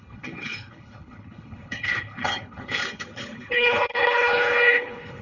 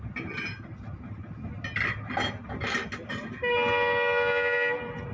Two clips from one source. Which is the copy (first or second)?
first